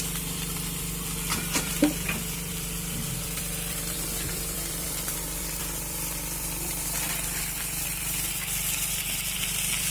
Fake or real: fake